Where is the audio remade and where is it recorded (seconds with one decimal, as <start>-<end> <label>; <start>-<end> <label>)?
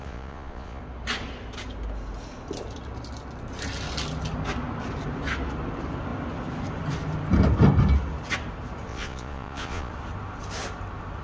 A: 0.0-0.8 remade; 0.8-8.9 recorded; 8.9-9.9 remade; 9.9-11.2 recorded